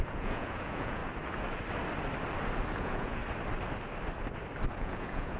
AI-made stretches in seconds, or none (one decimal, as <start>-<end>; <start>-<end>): 0.0-1.0; 2.8-3.2; 4.7-5.4